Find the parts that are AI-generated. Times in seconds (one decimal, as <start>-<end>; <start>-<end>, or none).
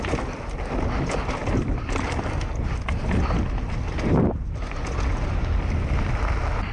none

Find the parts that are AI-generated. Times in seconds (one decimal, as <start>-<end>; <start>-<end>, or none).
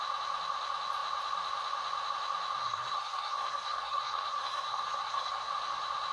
2.6-5.5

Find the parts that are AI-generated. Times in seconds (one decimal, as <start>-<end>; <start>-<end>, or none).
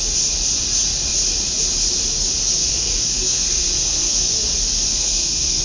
2.6-4.3; 4.9-5.6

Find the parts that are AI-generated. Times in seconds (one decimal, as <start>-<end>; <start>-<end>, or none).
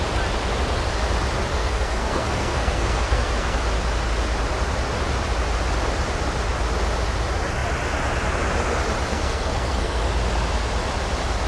1.5-3.6; 9.1-10.0